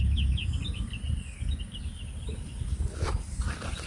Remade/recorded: recorded